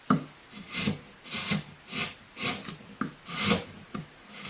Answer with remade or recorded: recorded